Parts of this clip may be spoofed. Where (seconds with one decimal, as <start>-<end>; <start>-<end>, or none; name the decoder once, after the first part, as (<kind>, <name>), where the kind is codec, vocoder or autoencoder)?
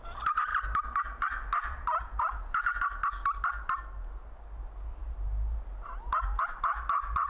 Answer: none